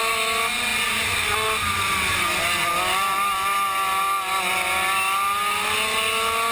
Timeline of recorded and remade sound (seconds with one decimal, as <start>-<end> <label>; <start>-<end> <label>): 0.0-6.5 recorded